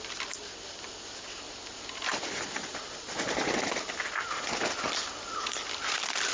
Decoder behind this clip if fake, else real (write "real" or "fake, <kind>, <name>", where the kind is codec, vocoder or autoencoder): real